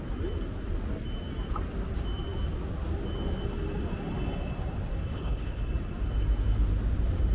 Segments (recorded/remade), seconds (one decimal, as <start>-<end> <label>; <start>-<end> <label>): 0.0-5.1 recorded; 5.1-5.6 remade; 5.6-7.3 recorded